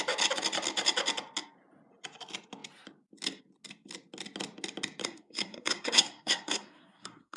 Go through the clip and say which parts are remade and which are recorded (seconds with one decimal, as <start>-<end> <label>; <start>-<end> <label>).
0.0-5.0 recorded; 5.0-7.4 remade